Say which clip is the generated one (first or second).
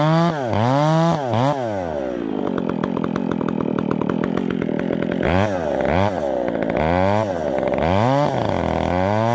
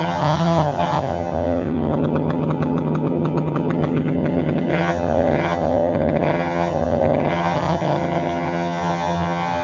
second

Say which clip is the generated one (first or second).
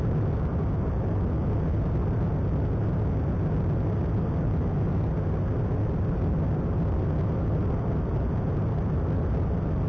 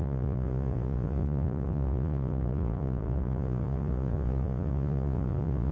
second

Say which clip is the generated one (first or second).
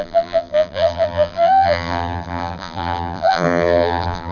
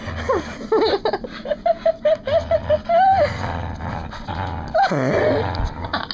first